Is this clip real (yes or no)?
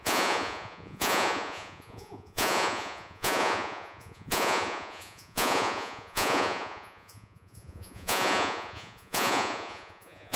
no